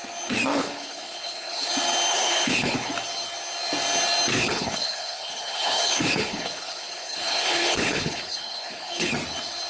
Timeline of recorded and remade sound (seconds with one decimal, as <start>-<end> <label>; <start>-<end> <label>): 0.0-0.6 recorded; 0.6-1.7 remade; 1.7-2.1 recorded; 2.1-2.9 remade; 2.9-4.3 recorded; 4.3-9.1 remade; 9.1-9.7 recorded